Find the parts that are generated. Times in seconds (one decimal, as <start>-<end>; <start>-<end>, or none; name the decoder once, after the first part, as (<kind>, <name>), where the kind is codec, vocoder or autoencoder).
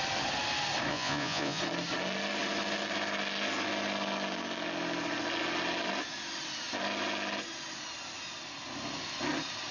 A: 0.9-1.6 (vocoder, Vocos)